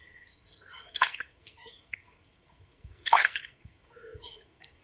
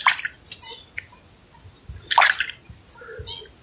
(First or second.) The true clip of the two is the second